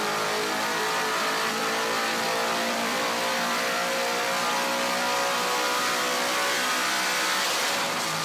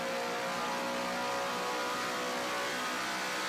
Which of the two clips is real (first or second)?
second